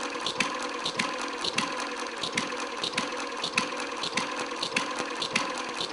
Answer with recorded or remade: recorded